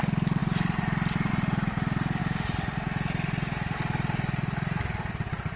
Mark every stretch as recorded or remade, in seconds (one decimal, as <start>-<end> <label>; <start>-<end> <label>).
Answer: 0.0-5.6 recorded